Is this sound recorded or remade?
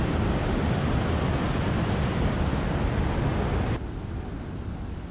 recorded